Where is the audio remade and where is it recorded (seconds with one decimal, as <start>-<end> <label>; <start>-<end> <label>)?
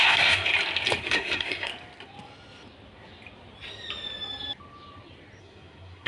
0.0-0.5 remade; 0.5-1.0 recorded; 1.0-1.7 remade; 1.7-5.4 recorded; 5.4-6.1 remade